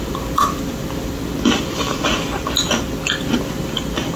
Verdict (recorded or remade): remade